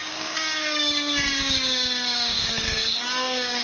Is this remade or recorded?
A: remade